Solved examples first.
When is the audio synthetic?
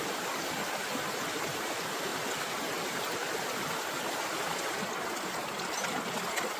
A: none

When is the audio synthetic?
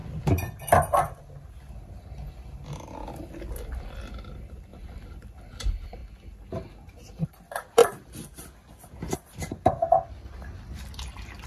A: 0.0-1.3 (vocoder, BigVGAN v2); 4.7-5.5